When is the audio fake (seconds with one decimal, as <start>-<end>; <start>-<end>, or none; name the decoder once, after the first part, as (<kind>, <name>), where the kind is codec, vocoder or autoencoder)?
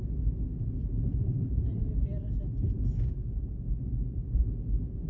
0.8-1.9 (vocoder, BigVGAN v2); 3.4-4.4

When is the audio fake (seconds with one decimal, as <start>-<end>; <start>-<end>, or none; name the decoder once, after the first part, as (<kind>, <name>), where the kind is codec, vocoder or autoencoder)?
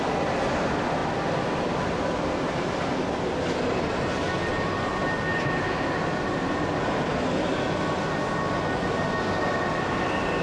none